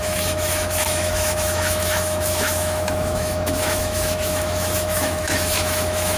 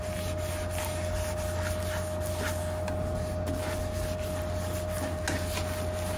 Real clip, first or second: second